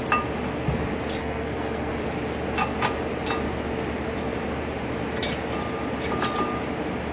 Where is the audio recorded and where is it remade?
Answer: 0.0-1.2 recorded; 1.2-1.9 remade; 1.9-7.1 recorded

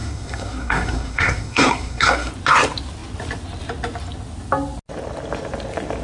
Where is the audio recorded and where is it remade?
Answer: 0.0-2.3 remade; 2.3-6.0 recorded

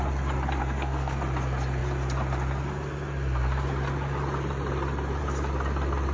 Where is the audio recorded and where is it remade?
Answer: 0.0-0.6 recorded; 0.6-1.2 remade; 1.2-6.1 recorded

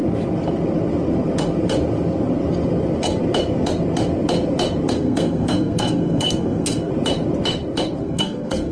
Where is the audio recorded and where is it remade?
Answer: 0.0-4.9 recorded; 4.9-6.9 remade; 6.9-8.0 recorded; 8.0-8.7 remade

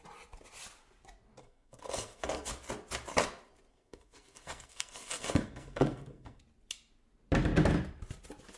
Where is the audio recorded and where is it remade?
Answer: 0.0-1.4 recorded; 1.4-2.5 remade; 2.5-3.7 recorded; 3.7-6.4 remade; 6.4-8.6 recorded

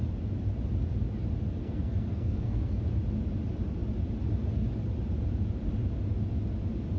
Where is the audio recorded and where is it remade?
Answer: 0.0-1.6 recorded; 1.6-2.8 remade; 2.8-7.0 recorded

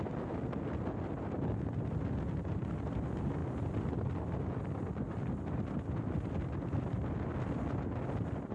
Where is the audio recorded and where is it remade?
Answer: 0.0-8.5 recorded